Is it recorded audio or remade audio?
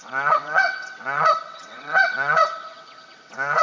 remade